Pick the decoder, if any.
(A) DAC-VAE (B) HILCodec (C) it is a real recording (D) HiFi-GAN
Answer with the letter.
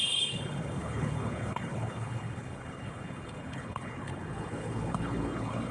B